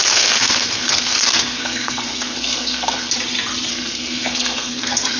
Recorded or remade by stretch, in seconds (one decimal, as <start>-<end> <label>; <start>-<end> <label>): 0.0-3.1 remade; 3.1-3.7 recorded; 3.7-5.2 remade